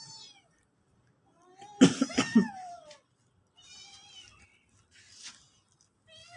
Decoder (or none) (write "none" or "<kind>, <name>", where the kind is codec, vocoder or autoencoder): none